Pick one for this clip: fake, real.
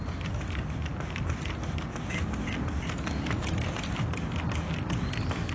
real